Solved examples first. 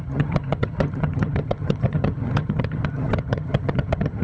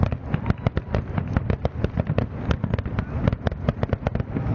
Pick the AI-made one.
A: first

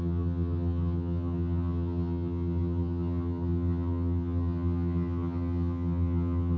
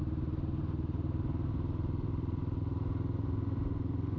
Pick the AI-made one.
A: first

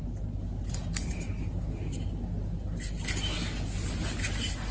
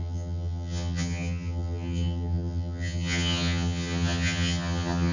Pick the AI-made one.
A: second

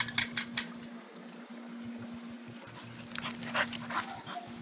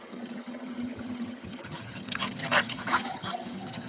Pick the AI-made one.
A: second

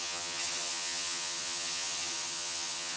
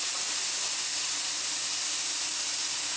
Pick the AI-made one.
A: first